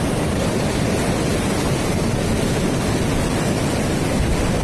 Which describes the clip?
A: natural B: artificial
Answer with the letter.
A